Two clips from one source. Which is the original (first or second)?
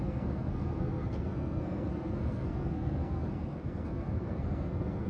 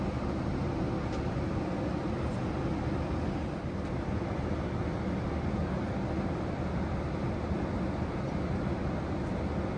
second